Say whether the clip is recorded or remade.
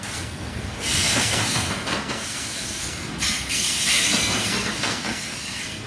remade